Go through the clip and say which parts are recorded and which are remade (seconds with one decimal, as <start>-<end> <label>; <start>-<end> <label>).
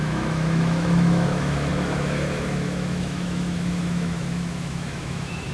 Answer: 0.0-5.5 remade